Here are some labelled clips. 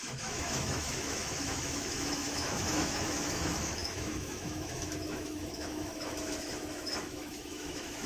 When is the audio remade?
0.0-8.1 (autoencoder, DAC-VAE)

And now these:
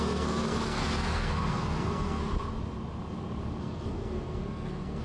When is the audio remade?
0.0-2.2 (codec, SNAC); 3.6-5.0

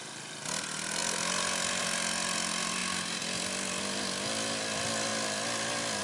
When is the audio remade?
none

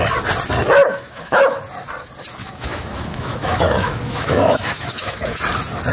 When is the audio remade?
0.9-1.6 (autoencoder, DAC-VAE); 2.4-5.4

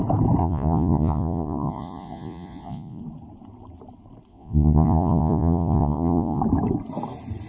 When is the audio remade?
0.4-3.0 (vocoder, Vocos); 4.3-6.4

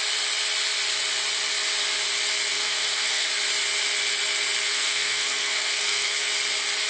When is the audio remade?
2.5-3.3 (codec, SNAC); 4.7-6.3